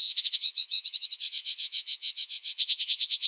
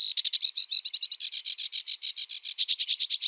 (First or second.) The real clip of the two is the second